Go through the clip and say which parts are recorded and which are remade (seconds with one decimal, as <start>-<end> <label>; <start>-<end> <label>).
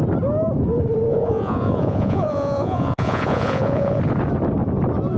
0.0-1.1 recorded; 1.1-4.0 remade; 4.0-5.2 recorded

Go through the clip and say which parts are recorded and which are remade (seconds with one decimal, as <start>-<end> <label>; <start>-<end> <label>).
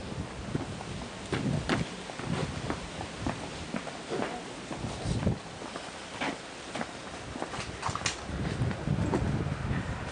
0.0-10.1 recorded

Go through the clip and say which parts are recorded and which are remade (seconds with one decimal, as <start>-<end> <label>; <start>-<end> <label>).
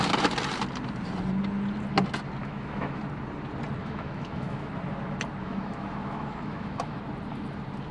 0.0-2.4 recorded; 2.4-3.0 remade; 3.0-3.8 recorded; 3.8-4.7 remade; 4.7-5.4 recorded; 5.4-7.0 remade; 7.0-7.9 recorded